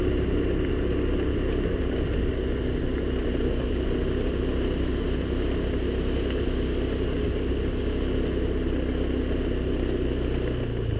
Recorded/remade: recorded